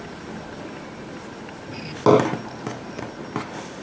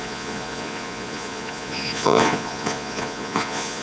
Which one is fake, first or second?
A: second